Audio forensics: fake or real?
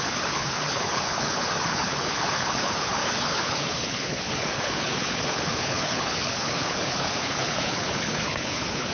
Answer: fake